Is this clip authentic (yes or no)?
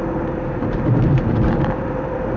no